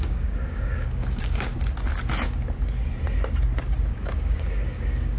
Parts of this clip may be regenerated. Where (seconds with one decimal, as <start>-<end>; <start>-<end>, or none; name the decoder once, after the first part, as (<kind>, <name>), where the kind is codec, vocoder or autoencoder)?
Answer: 0.0-1.5 (codec, DAC); 3.9-5.2